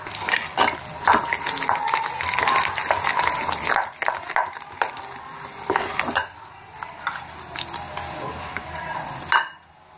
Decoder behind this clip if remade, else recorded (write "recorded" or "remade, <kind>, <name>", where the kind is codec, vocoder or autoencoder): recorded